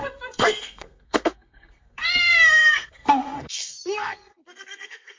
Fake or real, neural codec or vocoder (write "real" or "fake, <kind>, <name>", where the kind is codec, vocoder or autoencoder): fake, codec, SNAC